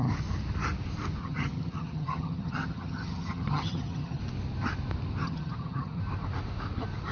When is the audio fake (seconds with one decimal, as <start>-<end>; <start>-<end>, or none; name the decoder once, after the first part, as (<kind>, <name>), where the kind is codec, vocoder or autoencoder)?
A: 1.2-4.2 (vocoder, HiFi-GAN); 5.2-6.0

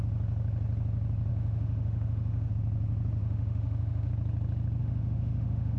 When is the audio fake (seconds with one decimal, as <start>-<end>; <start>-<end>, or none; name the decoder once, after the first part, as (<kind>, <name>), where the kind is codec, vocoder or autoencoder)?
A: 1.3-2.5 (autoencoder, DAC-VAE); 3.2-4.1; 4.8-5.8

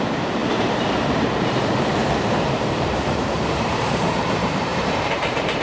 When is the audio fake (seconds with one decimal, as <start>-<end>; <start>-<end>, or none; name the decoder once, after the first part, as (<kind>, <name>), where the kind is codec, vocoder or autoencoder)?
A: 0.0-5.6 (vocoder, BigVGAN v2)

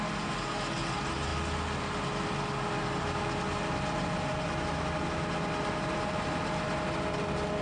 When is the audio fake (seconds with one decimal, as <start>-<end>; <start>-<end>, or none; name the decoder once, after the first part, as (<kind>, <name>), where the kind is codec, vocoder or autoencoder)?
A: none

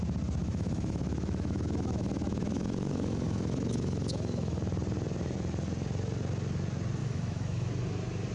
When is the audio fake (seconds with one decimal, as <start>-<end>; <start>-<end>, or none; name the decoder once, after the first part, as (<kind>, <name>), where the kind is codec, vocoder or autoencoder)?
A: 0.4-4.6 (autoencoder, DAC-VAE); 7.0-7.7

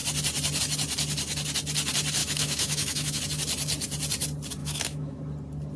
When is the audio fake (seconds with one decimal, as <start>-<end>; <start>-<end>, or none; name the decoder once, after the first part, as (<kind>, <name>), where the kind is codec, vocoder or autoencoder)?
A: 2.2-3.2 (autoencoder, DAC-VAE); 4.6-5.2

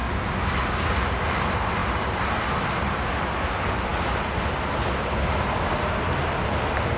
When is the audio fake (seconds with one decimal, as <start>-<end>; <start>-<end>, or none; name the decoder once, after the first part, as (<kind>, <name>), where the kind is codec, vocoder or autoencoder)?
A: none